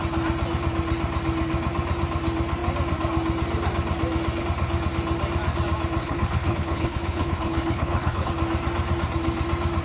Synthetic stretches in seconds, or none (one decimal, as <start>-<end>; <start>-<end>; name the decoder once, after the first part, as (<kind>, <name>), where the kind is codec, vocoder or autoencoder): 6.0-8.3 (codec, HILCodec)